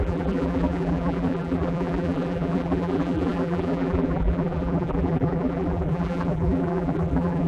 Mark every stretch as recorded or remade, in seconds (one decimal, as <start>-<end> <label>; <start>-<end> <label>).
0.0-7.5 remade